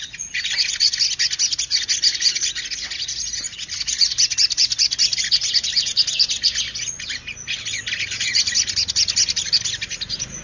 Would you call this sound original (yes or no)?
yes